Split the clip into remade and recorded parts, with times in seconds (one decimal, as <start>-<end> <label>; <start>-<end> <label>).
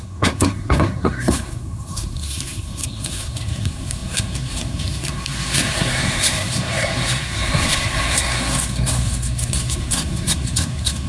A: 0.0-11.1 remade